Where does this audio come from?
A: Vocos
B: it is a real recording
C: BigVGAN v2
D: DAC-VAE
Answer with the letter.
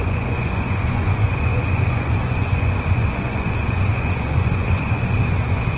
A